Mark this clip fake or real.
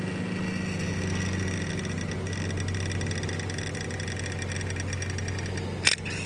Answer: real